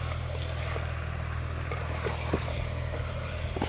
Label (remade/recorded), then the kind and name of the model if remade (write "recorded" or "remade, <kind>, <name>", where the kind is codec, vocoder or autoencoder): recorded